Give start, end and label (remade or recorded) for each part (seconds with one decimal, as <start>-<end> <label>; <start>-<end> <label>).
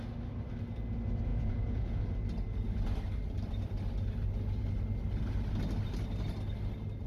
0.0-1.3 recorded; 1.3-2.0 remade; 2.0-7.1 recorded